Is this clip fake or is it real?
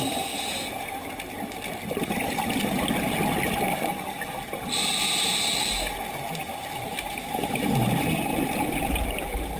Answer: real